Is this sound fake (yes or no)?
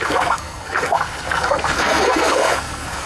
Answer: yes